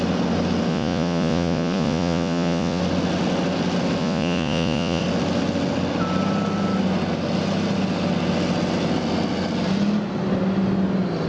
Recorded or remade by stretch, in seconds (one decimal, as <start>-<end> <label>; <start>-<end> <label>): 0.0-0.7 recorded; 0.7-2.8 remade; 2.8-4.0 recorded; 4.0-5.0 remade; 5.0-11.3 recorded